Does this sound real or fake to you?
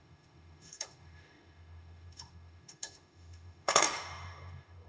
fake